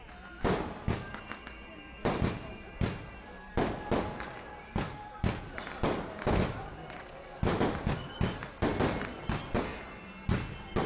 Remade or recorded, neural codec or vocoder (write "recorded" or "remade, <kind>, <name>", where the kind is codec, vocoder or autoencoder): recorded